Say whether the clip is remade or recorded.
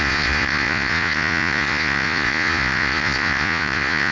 remade